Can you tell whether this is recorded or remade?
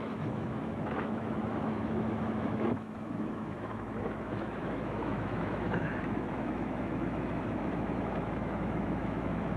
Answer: remade